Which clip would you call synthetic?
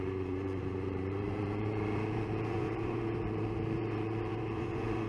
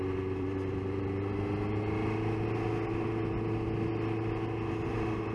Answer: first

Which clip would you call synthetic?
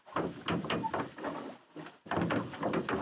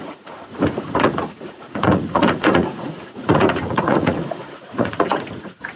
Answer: second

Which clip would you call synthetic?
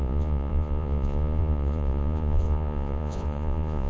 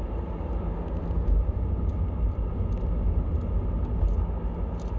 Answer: first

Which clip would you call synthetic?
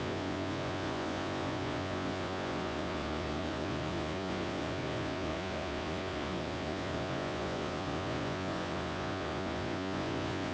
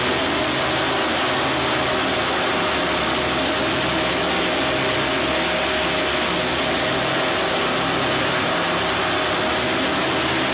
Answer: first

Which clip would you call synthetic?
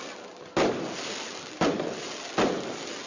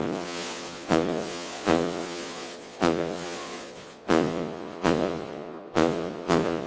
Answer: second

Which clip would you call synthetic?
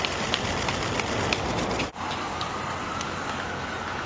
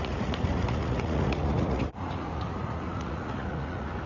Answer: second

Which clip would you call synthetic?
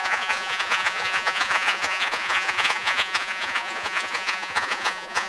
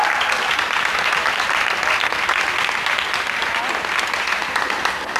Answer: first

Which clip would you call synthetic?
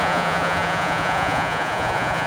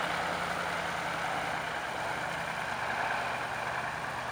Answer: first